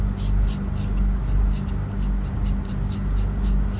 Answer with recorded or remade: recorded